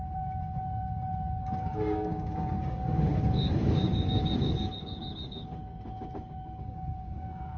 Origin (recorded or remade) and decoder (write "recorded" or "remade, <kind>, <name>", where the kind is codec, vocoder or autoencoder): remade, codec, DAC